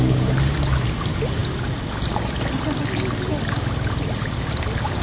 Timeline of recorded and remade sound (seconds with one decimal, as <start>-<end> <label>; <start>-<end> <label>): 0.0-5.0 recorded